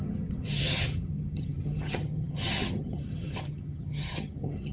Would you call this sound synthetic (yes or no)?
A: yes